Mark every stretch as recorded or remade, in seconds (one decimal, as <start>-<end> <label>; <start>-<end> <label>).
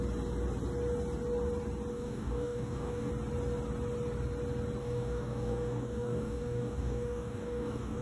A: 0.0-1.9 recorded; 1.9-3.1 remade; 3.1-4.8 recorded; 4.8-8.0 remade